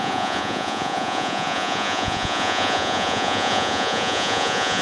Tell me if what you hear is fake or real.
fake